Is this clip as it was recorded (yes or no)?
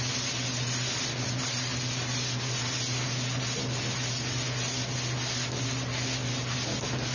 yes